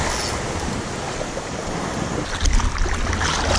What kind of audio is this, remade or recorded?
recorded